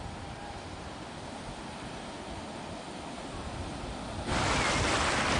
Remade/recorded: recorded